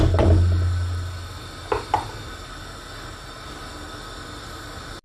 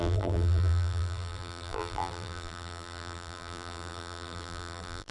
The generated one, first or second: second